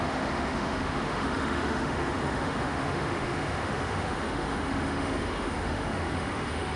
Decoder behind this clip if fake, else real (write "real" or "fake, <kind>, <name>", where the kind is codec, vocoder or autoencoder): fake, autoencoder, DAC-VAE